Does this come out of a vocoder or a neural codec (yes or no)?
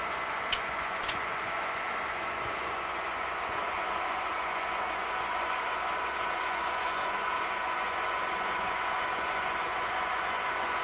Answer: yes